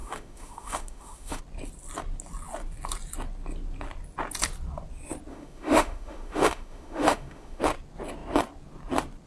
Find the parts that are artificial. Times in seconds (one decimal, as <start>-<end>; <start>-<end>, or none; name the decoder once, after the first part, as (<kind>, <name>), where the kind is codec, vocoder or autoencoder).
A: 0.0-1.4 (autoencoder, DAC-VAE); 5.3-7.6

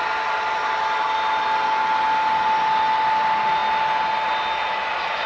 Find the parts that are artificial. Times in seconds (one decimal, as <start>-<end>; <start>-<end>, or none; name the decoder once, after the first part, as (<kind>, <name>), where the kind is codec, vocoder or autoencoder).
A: none

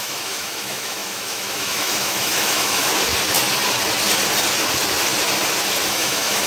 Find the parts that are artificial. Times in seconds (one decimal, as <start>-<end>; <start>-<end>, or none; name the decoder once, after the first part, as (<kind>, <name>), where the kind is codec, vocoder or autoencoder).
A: 0.0-2.9 (autoencoder, DAC-VAE); 5.9-6.5